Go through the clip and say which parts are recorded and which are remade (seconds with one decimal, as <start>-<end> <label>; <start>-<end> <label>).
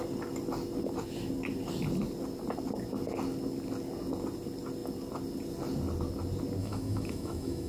0.0-6.6 recorded; 6.6-7.7 remade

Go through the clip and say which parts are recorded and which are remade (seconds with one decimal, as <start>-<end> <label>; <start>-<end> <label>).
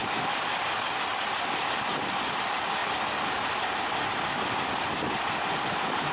0.0-6.1 recorded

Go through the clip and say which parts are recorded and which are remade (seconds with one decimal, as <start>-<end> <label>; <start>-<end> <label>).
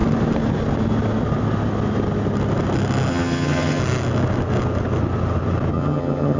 0.0-3.1 recorded; 3.1-3.8 remade; 3.8-5.7 recorded; 5.7-6.4 remade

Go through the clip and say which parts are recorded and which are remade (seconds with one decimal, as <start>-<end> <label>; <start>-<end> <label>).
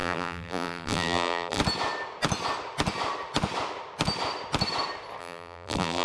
0.0-1.6 remade; 1.6-5.2 recorded; 5.2-6.0 remade